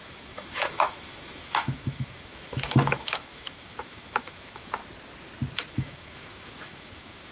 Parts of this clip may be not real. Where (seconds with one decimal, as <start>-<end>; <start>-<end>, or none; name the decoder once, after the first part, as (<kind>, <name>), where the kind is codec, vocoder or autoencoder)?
0.0-4.8 (autoencoder, DAC-VAE); 5.7-7.3